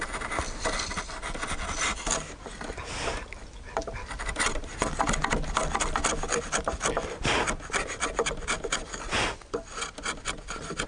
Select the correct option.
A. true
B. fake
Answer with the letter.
A